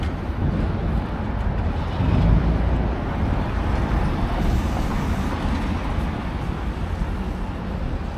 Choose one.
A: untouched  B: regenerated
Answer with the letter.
A